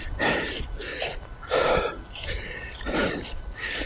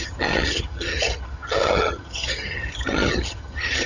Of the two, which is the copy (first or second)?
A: second